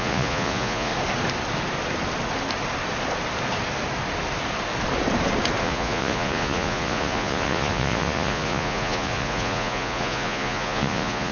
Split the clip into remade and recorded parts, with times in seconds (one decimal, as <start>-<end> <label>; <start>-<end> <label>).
0.0-0.9 remade; 0.9-5.6 recorded; 5.6-11.3 remade

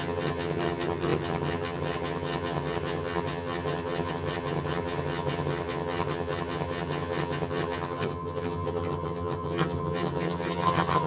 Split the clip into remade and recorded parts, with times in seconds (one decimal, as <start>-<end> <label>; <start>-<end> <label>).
0.0-11.1 remade

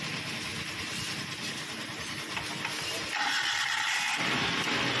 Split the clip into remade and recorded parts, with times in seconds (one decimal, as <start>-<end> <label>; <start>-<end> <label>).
0.0-5.0 recorded

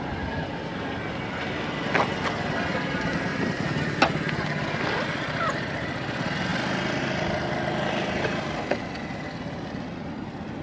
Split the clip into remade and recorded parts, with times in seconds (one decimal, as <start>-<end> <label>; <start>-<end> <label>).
0.0-10.6 recorded

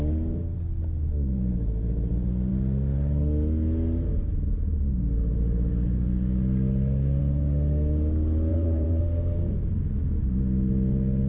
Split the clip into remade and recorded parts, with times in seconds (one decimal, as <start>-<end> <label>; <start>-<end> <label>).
0.0-8.5 recorded; 8.5-9.0 remade; 9.0-11.3 recorded

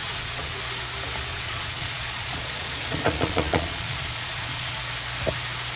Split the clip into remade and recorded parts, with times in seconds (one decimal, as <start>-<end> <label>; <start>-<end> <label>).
0.0-0.6 remade; 0.6-1.3 recorded; 1.3-4.8 remade; 4.8-5.8 recorded

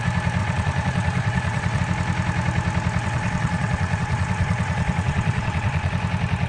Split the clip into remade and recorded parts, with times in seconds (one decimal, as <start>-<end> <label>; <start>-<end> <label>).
0.0-0.4 recorded; 0.4-1.8 remade; 1.8-3.0 recorded; 3.0-5.9 remade; 5.9-6.5 recorded

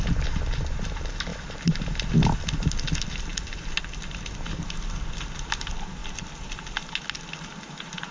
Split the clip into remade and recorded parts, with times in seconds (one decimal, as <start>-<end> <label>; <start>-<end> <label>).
0.0-1.3 recorded; 1.3-2.1 remade; 2.1-8.1 recorded